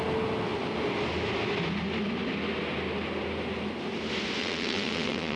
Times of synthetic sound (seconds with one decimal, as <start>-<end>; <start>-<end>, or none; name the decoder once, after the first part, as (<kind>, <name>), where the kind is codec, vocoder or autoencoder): 4.4-5.4 (vocoder, WaveNeXt)